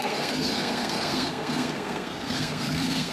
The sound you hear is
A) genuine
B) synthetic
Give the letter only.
B